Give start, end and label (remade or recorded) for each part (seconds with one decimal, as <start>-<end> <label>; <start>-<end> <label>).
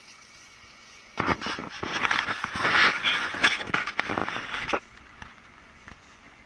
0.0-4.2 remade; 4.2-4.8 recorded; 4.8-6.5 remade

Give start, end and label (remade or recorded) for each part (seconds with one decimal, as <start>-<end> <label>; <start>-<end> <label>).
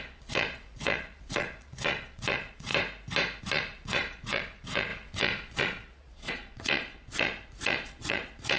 0.0-2.7 remade; 2.7-3.4 recorded; 3.4-8.6 remade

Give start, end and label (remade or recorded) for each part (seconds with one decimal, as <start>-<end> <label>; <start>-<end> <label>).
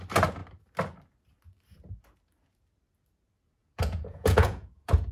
0.0-3.6 recorded; 3.6-5.1 remade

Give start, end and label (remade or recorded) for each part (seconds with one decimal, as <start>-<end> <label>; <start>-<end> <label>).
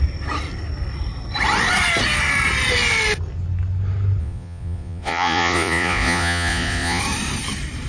0.0-4.2 recorded; 4.2-7.0 remade; 7.0-7.9 recorded